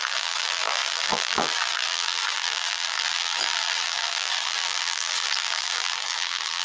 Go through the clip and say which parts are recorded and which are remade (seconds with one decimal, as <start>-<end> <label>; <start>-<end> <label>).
0.0-6.6 remade